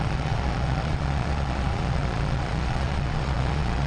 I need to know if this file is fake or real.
fake